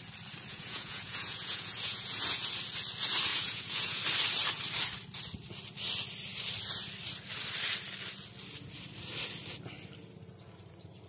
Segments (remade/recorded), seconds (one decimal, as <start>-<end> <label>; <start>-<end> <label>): 0.0-0.5 recorded; 0.5-2.5 remade; 2.5-3.3 recorded; 3.3-4.0 remade; 4.0-11.1 recorded